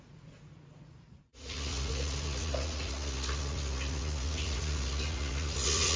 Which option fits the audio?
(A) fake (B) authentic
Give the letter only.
A